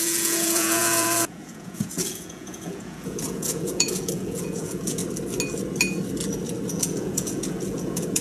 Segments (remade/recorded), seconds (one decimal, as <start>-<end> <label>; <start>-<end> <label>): 0.0-5.0 remade; 5.0-6.7 recorded; 6.7-8.2 remade